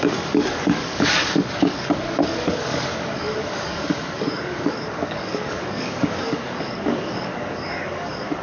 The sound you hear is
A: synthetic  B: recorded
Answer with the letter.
A